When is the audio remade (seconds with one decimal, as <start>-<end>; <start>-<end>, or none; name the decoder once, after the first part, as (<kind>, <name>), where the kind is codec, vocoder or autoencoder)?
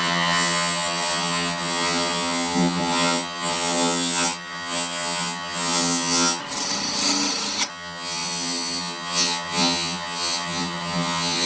0.0-6.4 (vocoder, HiFi-GAN); 7.7-11.5